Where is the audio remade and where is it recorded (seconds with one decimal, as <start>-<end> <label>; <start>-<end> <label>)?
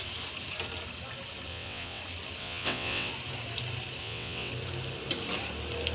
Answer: 0.0-1.5 recorded; 1.5-2.0 remade; 2.0-2.4 recorded; 2.4-3.1 remade; 3.1-4.0 recorded; 4.0-4.5 remade; 4.5-5.9 recorded